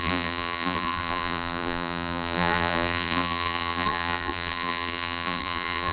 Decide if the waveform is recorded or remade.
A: remade